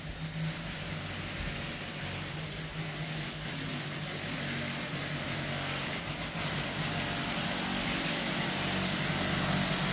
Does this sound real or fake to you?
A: real